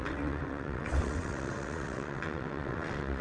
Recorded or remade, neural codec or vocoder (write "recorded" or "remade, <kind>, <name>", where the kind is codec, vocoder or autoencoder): remade, vocoder, WaveNeXt